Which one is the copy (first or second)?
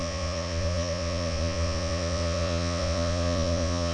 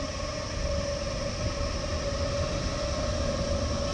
first